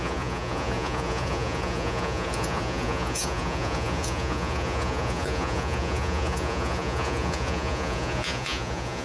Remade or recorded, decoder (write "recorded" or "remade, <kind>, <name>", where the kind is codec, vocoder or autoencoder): remade, vocoder, Vocos